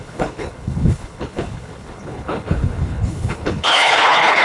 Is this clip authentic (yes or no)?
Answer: no